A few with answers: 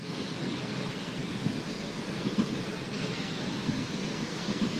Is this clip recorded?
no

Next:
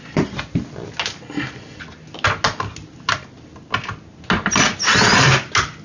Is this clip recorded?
yes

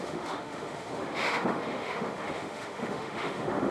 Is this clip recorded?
no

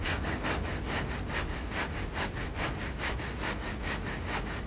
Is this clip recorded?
yes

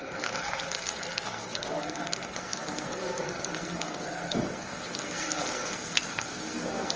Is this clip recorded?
no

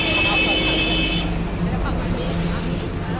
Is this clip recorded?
yes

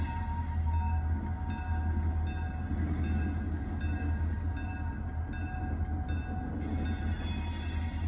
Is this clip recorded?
yes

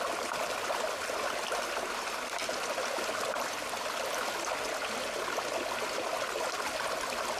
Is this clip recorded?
yes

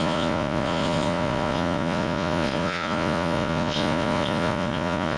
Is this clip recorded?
no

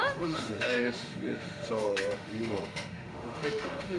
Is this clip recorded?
no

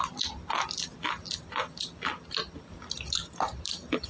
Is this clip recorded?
yes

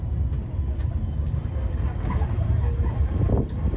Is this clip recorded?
yes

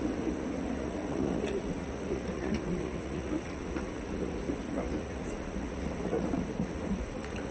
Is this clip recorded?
no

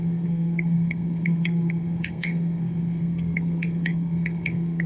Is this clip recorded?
no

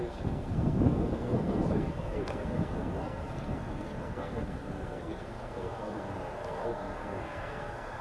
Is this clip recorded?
no